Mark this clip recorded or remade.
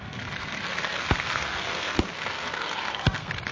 remade